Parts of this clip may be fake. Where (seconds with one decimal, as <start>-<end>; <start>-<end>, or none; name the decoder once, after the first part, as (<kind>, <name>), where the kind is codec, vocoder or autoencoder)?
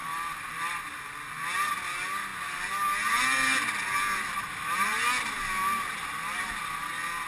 0.0-1.1 (vocoder, BigVGAN v2)